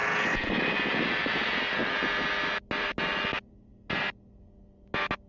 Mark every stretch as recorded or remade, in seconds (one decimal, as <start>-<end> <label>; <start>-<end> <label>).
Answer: 0.0-5.3 recorded